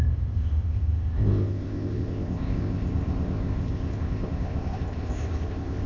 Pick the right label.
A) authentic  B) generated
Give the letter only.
B